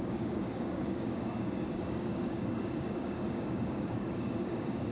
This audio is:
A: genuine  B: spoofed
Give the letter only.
B